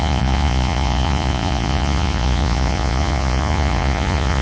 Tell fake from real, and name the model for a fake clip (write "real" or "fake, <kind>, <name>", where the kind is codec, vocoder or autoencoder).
fake, vocoder, Vocos